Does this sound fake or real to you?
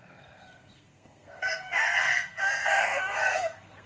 fake